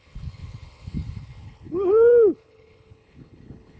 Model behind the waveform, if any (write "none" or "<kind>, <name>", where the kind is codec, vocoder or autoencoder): codec, HILCodec